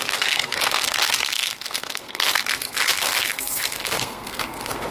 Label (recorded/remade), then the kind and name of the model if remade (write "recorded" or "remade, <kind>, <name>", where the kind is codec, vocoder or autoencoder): remade, codec, SNAC